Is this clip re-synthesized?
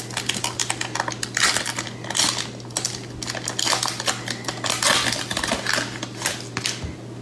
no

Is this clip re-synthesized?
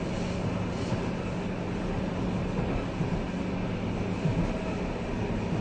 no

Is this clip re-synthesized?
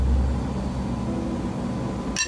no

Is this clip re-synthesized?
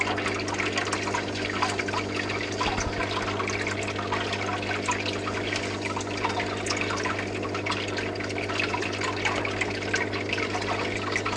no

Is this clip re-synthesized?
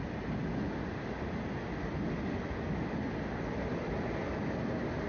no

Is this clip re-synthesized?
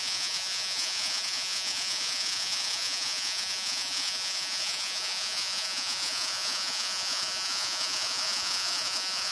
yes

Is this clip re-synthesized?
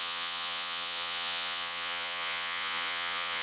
yes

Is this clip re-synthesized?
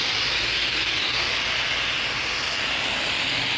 no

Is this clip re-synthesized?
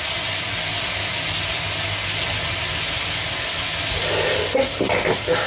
no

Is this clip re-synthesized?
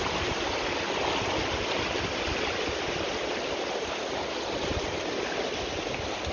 no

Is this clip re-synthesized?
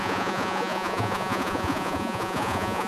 yes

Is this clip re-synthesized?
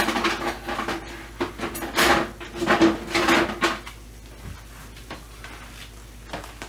no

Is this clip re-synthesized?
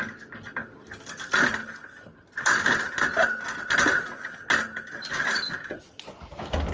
no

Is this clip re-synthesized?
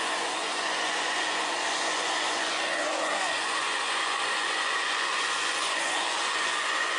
yes